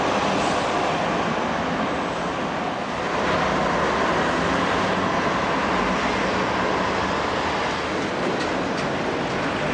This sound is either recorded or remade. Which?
recorded